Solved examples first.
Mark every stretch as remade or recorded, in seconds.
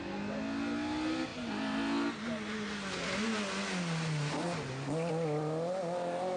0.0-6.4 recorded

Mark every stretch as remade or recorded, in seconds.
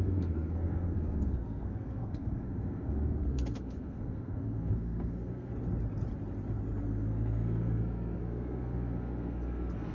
0.0-5.5 remade; 5.5-6.8 recorded; 6.8-9.9 remade